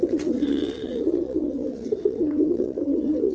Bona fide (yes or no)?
no